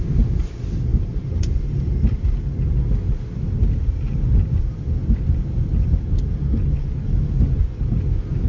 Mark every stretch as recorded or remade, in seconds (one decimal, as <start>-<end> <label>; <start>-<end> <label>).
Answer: 0.0-0.9 recorded; 0.9-1.6 remade; 1.6-8.5 recorded